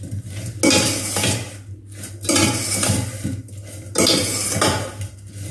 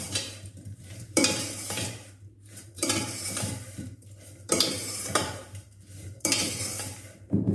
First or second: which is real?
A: first